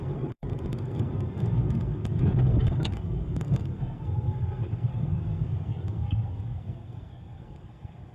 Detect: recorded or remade remade